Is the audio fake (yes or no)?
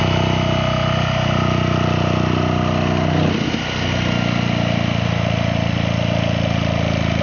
no